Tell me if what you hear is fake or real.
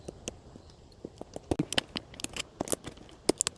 real